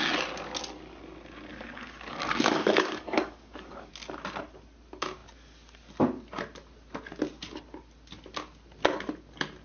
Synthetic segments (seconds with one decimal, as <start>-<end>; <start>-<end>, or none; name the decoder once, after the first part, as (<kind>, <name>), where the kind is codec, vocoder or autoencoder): 1.5-3.9 (codec, DAC)